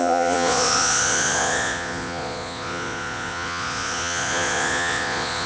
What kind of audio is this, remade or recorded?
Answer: remade